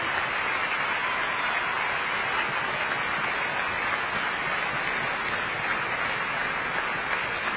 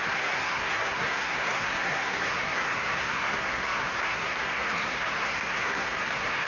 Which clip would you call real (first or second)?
first